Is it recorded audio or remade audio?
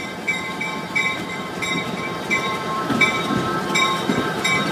remade